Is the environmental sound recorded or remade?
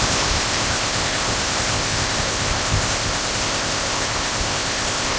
remade